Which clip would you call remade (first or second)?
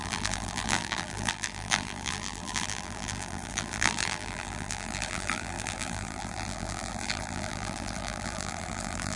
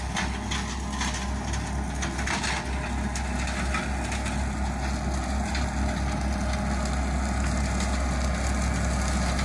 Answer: first